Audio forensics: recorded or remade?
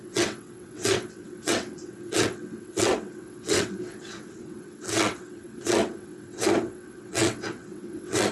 remade